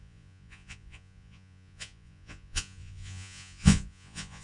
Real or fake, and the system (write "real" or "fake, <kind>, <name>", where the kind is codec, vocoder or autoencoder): fake, vocoder, Vocos